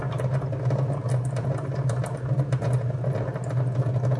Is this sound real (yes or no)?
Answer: yes